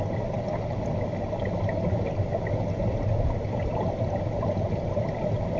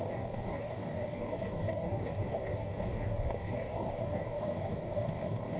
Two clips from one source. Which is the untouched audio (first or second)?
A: first